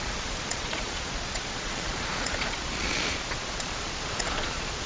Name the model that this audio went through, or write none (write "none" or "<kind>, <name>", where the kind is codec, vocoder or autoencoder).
vocoder, Vocos